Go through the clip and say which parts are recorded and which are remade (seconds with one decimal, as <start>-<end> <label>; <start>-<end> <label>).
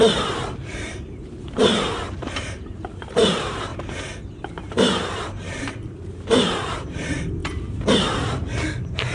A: 0.0-3.7 remade; 3.7-4.3 recorded; 4.3-9.1 remade